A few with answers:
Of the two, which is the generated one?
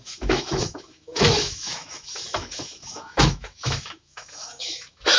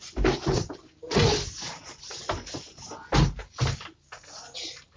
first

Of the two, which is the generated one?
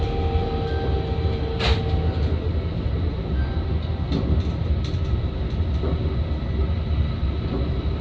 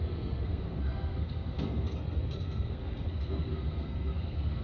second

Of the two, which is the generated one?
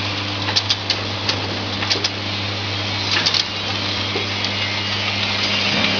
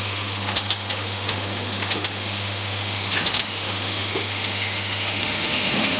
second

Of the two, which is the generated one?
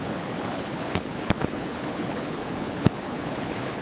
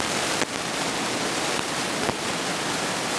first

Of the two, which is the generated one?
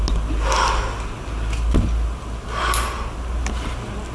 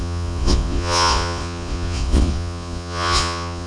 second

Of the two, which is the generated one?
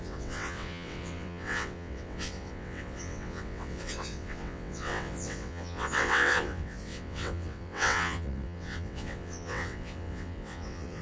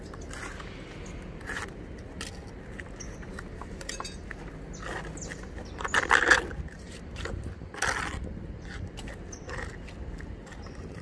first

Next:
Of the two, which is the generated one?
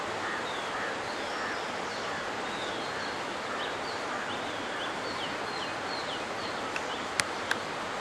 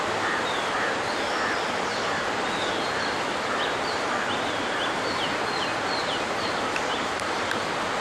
second